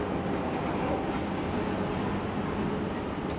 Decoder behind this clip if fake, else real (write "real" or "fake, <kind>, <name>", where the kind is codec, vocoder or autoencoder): real